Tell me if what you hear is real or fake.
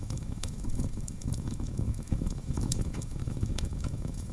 fake